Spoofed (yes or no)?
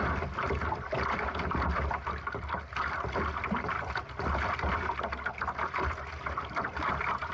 no